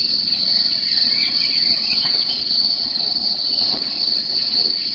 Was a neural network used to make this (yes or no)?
yes